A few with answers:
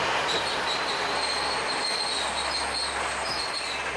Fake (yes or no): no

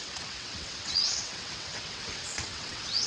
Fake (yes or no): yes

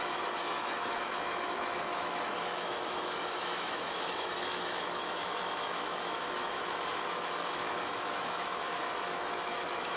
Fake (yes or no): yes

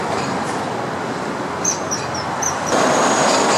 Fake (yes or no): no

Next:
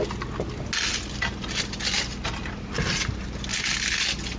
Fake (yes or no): no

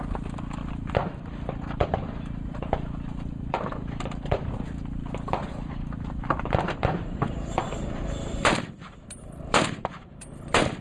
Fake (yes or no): yes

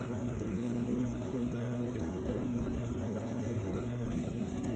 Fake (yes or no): yes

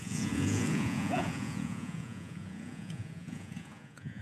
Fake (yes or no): yes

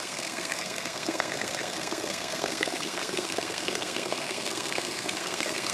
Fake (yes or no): yes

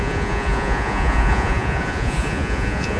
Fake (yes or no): yes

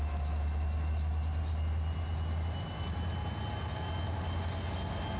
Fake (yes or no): no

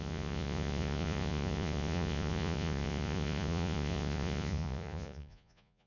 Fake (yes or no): yes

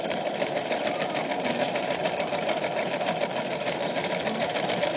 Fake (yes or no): yes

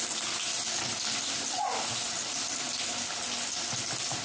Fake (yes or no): no